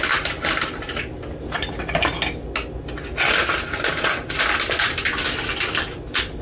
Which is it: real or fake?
real